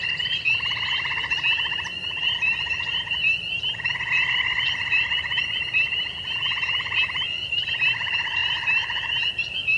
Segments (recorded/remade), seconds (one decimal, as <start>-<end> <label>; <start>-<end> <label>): 0.0-8.4 remade; 8.4-9.3 recorded; 9.3-9.8 remade